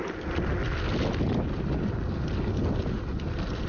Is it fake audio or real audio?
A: real